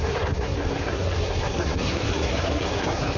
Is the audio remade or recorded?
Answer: remade